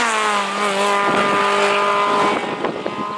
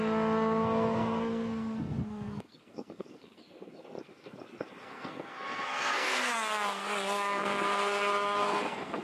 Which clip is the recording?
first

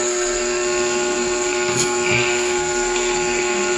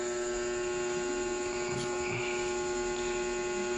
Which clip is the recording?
second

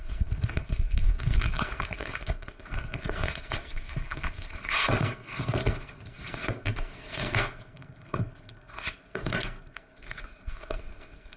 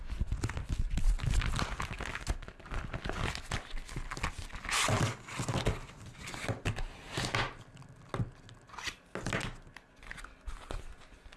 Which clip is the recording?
second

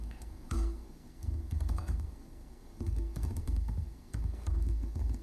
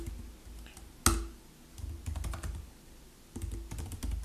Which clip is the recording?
second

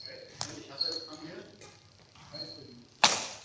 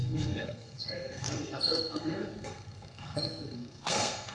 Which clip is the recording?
first